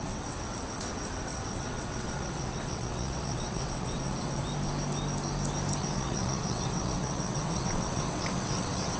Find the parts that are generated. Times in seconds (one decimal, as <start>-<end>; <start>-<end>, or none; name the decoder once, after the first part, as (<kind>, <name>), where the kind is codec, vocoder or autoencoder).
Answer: 0.0-4.4 (vocoder, WaveNeXt); 5.8-9.0